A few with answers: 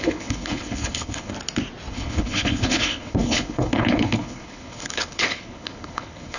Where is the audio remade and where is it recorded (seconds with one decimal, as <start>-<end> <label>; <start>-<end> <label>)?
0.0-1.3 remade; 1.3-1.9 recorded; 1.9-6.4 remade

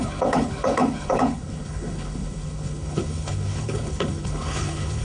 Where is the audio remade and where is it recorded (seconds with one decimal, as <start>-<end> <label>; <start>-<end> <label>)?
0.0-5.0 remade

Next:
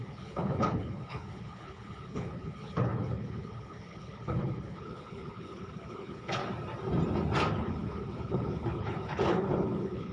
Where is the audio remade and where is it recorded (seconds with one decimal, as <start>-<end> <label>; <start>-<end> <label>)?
0.0-6.4 remade; 6.4-7.5 recorded; 7.5-10.1 remade

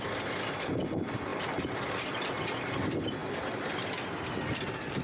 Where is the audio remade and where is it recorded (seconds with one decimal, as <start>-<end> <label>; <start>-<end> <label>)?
0.0-5.0 recorded

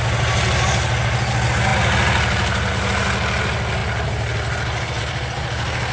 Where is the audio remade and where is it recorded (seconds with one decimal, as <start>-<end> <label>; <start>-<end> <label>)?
0.0-5.9 recorded